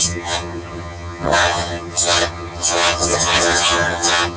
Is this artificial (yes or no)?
yes